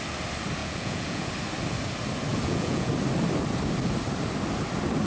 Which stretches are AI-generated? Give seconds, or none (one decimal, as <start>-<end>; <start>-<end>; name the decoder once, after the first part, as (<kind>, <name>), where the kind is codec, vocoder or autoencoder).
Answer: 0.6-1.3 (vocoder, Vocos); 2.3-2.9